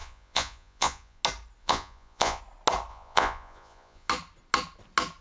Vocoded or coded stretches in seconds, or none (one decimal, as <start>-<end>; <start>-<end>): 0.0-1.2; 1.6-2.4; 2.9-4.1